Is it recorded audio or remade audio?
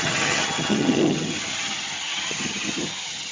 remade